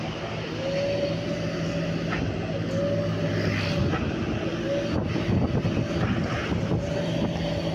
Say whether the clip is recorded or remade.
recorded